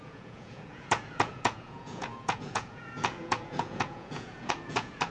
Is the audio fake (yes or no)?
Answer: yes